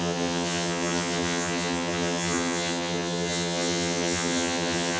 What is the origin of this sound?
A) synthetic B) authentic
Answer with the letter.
A